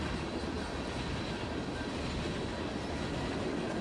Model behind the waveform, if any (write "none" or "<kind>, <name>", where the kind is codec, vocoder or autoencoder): none